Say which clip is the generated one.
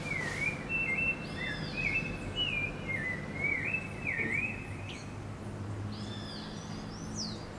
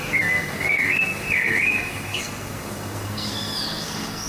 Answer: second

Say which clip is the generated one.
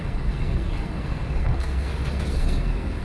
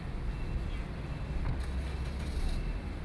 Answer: first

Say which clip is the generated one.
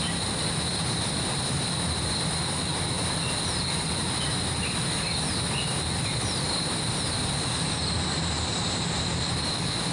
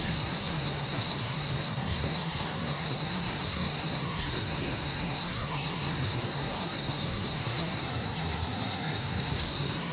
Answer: second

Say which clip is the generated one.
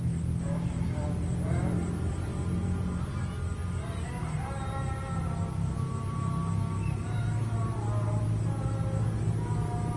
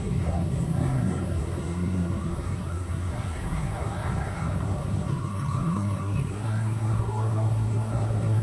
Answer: second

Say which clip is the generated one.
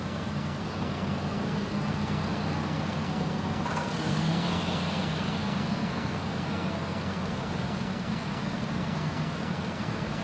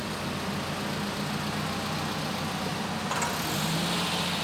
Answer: first